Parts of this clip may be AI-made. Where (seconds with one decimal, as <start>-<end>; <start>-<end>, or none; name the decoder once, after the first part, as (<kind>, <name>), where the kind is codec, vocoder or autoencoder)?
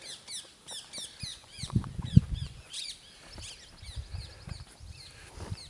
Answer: 1.3-2.9 (vocoder, Vocos)